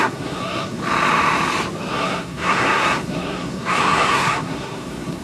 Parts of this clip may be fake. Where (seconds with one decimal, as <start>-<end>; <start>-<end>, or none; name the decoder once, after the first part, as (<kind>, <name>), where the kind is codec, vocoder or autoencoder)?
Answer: 0.0-0.8 (codec, SNAC); 1.9-5.2